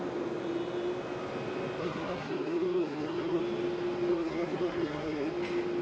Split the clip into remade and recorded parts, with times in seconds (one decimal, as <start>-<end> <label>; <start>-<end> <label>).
0.0-1.8 recorded; 1.8-3.4 remade; 3.4-4.1 recorded; 4.1-5.3 remade; 5.3-5.8 recorded